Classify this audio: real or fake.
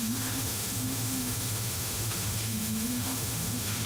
fake